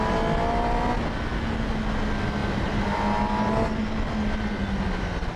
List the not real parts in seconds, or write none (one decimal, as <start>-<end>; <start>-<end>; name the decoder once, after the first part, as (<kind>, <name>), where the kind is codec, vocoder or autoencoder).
none